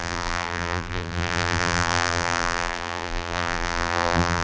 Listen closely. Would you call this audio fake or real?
fake